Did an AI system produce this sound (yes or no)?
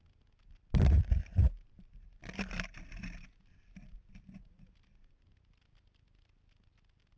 no